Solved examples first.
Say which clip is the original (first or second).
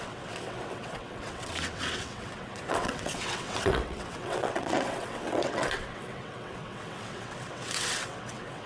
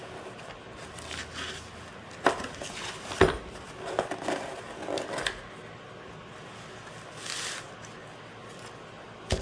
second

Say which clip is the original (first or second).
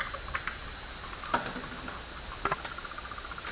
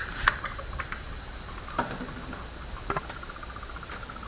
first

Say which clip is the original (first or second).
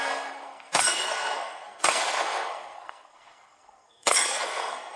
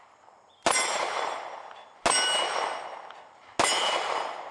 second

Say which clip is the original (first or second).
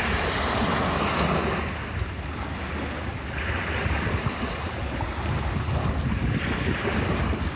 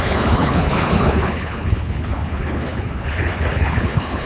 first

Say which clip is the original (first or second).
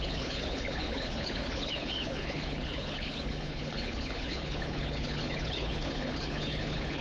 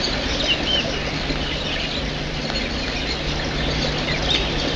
second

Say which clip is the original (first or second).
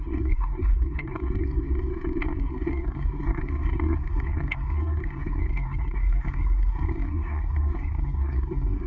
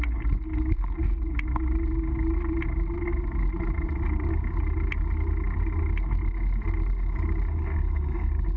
second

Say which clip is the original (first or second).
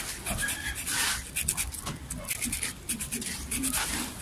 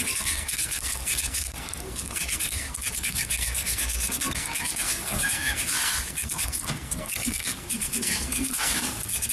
first